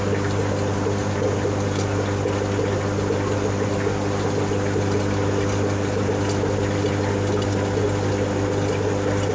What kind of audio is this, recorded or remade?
recorded